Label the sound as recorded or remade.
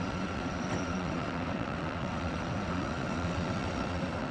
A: remade